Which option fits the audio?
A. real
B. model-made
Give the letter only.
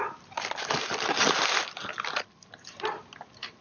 A